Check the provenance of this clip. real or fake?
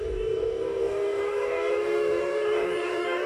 fake